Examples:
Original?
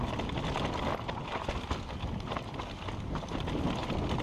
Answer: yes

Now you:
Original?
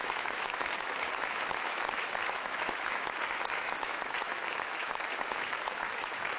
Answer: no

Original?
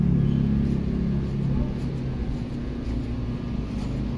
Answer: yes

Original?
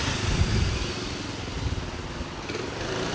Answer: yes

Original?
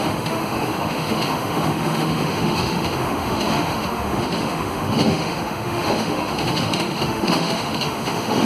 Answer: no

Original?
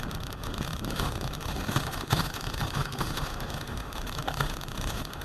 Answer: no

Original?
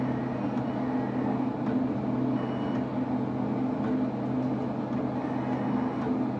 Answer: yes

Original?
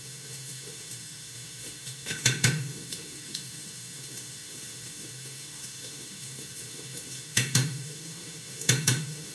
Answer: no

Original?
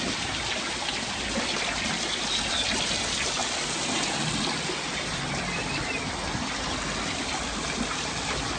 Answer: yes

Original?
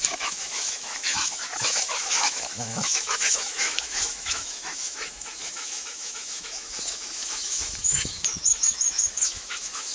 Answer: no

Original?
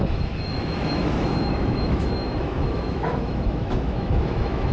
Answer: no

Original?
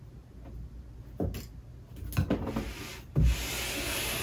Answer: yes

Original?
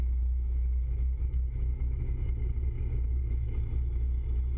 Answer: no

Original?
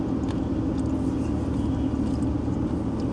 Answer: yes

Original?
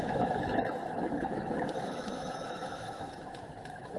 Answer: no